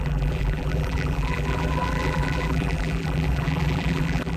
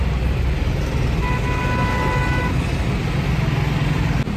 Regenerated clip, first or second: first